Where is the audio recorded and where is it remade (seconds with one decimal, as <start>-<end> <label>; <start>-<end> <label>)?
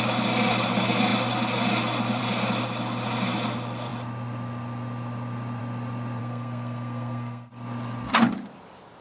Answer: 0.0-6.2 recorded; 6.2-7.5 remade; 7.5-9.0 recorded